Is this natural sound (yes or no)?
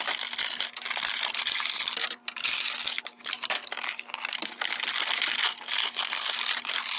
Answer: yes